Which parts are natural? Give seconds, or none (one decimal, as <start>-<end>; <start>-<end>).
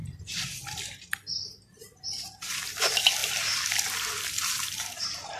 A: 0.0-5.4